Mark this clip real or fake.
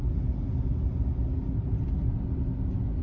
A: real